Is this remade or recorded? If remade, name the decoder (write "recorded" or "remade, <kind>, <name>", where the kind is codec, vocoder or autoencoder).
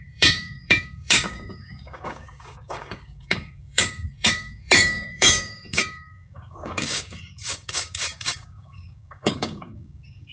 remade, codec, DAC